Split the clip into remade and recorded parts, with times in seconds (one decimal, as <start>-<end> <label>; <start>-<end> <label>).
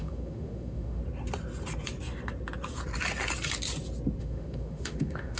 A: 0.0-1.0 remade; 1.0-4.2 recorded; 4.2-5.4 remade